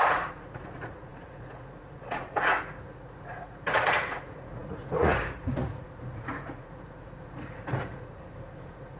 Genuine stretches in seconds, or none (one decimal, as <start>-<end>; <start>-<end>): none